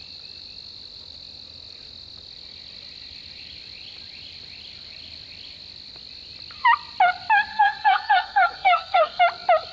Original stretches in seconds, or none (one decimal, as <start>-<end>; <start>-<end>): 0.0-7.5; 9.2-9.7